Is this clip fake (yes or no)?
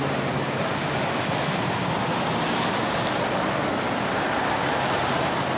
no